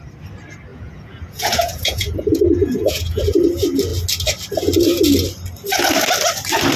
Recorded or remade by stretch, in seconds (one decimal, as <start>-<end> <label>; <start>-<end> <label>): 0.0-0.7 recorded; 0.7-3.2 remade; 3.2-6.8 recorded